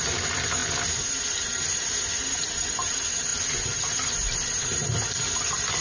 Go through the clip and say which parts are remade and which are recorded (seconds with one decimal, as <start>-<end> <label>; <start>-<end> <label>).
0.0-5.8 recorded